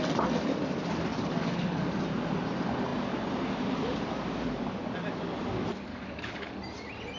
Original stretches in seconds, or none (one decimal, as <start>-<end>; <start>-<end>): 0.0-1.1; 2.0-5.9; 6.5-7.2

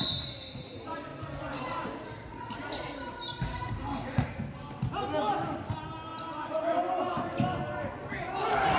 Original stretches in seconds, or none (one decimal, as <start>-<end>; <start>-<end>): 0.0-3.5; 4.3-8.8

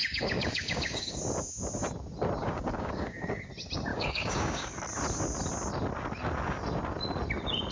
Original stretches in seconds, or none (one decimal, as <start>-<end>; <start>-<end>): 1.2-2.4; 3.5-3.9; 4.8-7.7

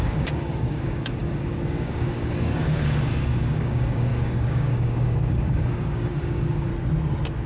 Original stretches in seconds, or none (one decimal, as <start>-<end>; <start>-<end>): 6.7-7.5

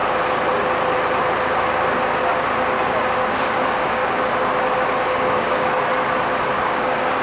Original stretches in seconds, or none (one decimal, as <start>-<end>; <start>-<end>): 0.0-2.7; 4.0-5.0; 5.9-6.4

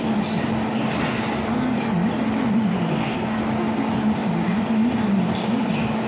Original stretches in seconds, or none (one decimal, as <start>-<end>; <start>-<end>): 0.0-2.9; 3.4-6.1

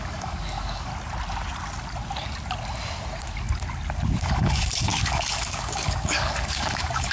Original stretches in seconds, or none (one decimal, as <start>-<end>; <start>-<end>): 0.9-4.2

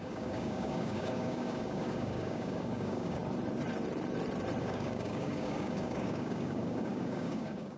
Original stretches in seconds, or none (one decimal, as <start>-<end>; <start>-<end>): 3.2-4.6